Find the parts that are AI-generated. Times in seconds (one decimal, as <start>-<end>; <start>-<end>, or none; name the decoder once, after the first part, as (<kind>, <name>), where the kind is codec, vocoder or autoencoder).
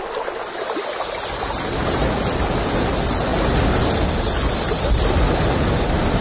none